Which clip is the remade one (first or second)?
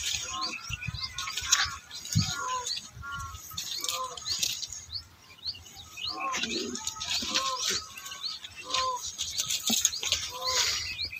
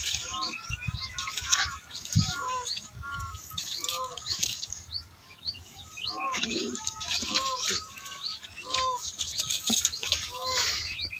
second